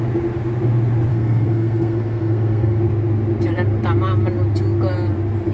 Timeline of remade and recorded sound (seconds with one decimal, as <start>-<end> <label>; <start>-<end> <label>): 0.0-1.1 recorded; 1.1-2.8 remade; 2.8-5.5 recorded